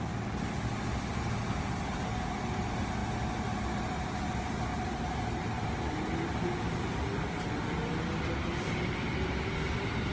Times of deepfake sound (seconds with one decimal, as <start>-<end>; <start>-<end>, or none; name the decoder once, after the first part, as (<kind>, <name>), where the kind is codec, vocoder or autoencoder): none